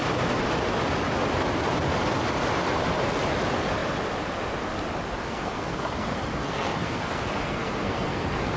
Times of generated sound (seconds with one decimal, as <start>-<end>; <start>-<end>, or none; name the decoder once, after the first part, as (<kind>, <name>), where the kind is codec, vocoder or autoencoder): 5.2-8.6 (codec, SNAC)